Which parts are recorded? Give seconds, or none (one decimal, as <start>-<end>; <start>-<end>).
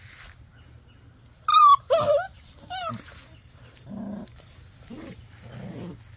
0.0-1.5; 5.2-6.2